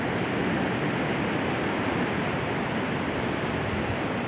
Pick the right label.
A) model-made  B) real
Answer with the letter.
B